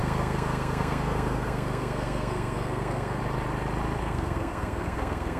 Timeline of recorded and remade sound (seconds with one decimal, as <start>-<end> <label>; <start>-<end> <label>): 0.0-3.2 remade; 3.2-4.0 recorded; 4.0-5.4 remade